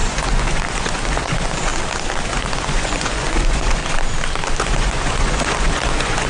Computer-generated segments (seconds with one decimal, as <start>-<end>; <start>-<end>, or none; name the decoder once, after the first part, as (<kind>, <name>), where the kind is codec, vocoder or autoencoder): 0.0-1.7 (vocoder, Vocos); 2.3-3.8; 4.6-6.3